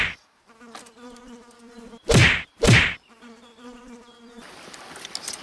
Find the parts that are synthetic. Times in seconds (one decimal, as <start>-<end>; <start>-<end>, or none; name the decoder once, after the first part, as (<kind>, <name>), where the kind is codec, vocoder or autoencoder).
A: 2.2-3.8 (vocoder, BigVGAN v2)